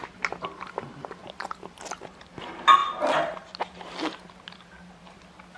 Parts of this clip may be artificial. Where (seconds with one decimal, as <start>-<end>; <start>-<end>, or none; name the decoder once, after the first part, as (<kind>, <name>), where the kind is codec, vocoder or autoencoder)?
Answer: none

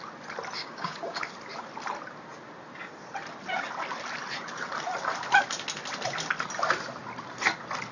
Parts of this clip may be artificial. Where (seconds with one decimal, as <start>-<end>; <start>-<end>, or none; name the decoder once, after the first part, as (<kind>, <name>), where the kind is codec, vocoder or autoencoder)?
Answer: 0.6-1.2 (codec, DAC)

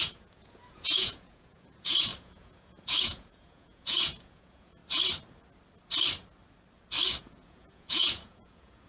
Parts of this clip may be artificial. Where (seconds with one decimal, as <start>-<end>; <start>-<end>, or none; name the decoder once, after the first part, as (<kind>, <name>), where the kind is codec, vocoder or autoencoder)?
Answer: 0.0-4.8 (vocoder, Vocos); 7.2-8.9

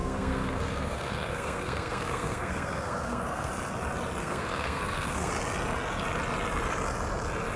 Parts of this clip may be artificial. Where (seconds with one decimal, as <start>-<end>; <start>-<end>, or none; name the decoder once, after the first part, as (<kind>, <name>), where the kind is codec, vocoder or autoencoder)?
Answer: 0.0-3.5 (codec, SNAC); 4.2-5.3

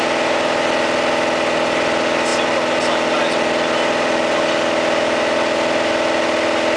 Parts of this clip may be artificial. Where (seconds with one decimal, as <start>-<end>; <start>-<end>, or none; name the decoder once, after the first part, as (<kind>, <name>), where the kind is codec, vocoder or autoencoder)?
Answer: none

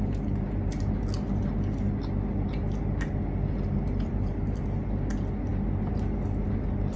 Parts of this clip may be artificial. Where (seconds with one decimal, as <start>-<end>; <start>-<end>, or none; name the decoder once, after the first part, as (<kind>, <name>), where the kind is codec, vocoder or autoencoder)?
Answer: none

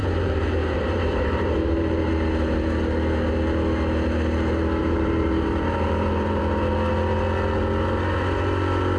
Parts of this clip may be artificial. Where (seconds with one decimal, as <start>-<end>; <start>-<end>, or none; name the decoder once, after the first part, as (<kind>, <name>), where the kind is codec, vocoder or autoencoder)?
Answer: 0.0-2.1 (vocoder, BigVGAN v2); 4.8-6.4

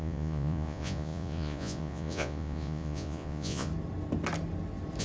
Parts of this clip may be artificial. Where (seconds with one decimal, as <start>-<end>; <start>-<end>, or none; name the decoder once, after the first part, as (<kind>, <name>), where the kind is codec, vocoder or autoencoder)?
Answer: 0.0-3.7 (vocoder, Vocos)